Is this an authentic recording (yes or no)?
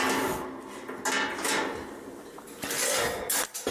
yes